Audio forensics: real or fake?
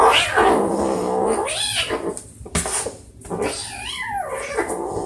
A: real